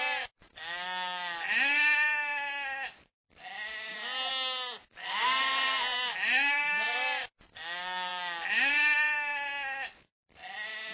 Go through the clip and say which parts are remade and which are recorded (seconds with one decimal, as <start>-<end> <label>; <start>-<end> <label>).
0.0-10.9 recorded